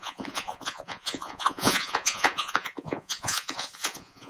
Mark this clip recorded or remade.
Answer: remade